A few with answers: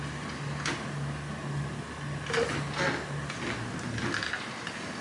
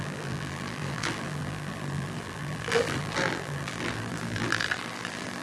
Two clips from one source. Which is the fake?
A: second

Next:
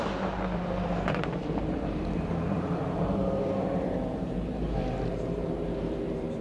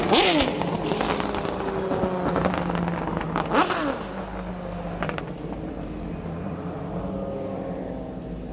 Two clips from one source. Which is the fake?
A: first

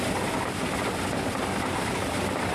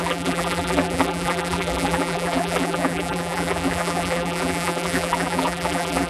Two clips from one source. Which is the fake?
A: second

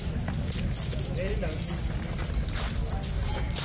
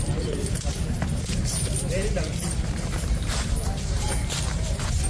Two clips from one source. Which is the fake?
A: second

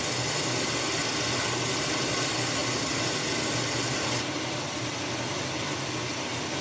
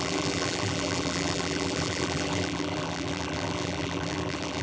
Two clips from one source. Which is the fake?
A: second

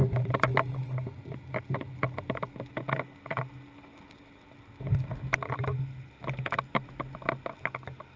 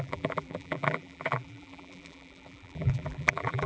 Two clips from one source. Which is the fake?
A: second